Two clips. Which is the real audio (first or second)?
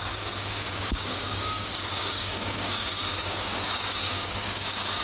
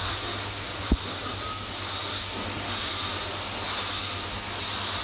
second